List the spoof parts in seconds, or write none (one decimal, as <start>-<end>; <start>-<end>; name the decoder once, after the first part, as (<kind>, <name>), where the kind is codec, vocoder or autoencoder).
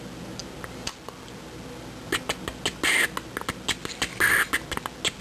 none